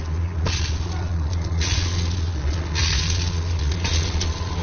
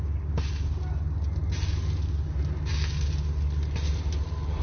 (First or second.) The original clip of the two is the second